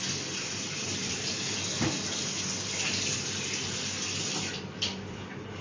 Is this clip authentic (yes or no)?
yes